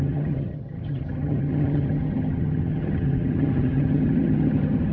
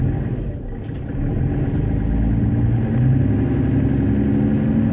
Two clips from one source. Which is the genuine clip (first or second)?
second